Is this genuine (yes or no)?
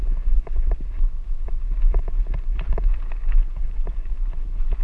yes